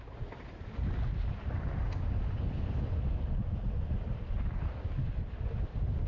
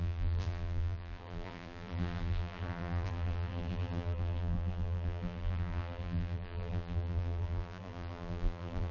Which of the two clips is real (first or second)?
first